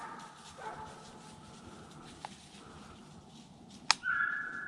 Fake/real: real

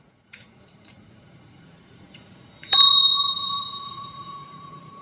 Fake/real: fake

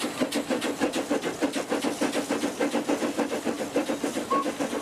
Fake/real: real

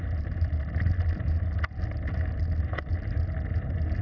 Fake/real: real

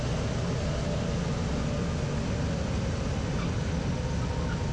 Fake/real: real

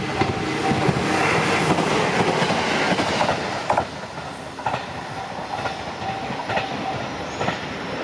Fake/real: real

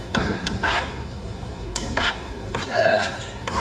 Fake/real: fake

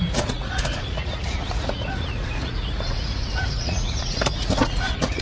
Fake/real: fake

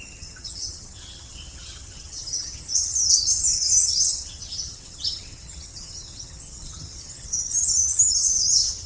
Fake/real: fake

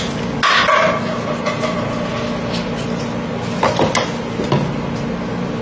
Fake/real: real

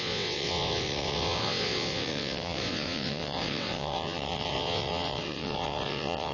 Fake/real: fake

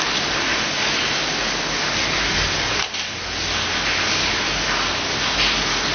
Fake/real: real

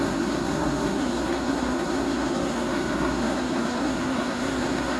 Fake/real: fake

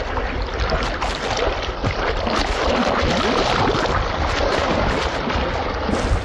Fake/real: real